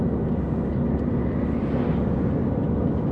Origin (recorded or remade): recorded